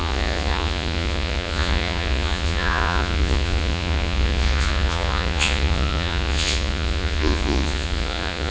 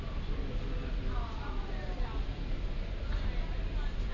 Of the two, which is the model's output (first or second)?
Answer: first